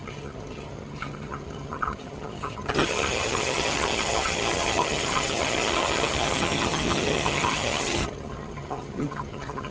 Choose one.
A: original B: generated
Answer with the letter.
B